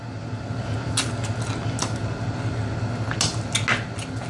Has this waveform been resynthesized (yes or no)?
no